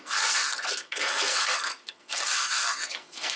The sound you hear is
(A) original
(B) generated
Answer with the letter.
B